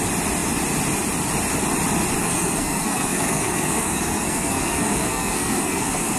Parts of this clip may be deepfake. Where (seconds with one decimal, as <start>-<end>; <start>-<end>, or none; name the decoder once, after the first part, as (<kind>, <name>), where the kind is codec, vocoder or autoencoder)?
2.2-6.2 (codec, SNAC)